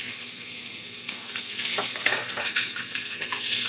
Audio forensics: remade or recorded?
remade